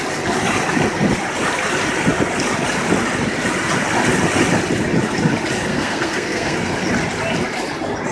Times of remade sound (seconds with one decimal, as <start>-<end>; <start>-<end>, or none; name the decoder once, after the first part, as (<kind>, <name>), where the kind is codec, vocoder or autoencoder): 5.7-6.7 (codec, SNAC)